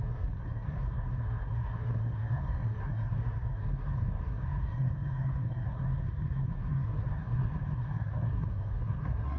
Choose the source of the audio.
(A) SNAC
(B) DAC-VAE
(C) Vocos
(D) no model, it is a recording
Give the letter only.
A